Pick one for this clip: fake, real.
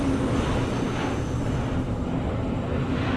real